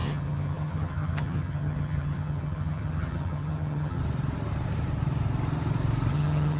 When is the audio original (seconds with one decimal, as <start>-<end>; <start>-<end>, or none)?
4.0-6.1

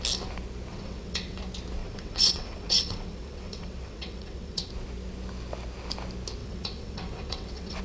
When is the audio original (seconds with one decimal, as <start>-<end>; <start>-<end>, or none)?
0.0-0.7; 1.4-1.8; 4.7-6.4

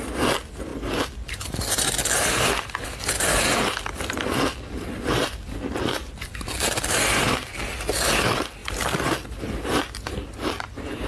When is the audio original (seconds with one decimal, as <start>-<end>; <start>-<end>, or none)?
0.0-11.1

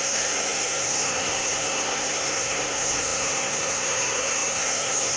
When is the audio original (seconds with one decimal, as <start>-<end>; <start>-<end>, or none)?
none

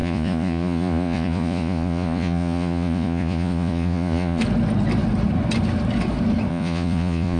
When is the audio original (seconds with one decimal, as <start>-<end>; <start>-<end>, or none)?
4.4-6.5

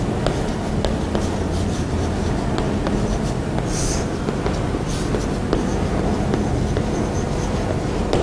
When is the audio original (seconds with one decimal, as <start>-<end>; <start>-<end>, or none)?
0.0-8.2

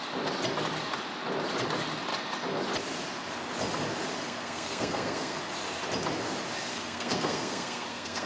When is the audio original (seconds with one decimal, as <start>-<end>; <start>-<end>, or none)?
0.0-4.2; 5.4-6.7

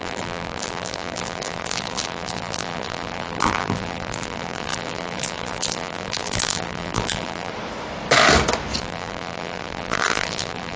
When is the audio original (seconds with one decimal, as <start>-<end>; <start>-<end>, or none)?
7.5-8.8